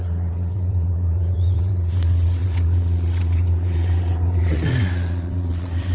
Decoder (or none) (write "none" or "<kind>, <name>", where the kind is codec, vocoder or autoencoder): vocoder, WaveNeXt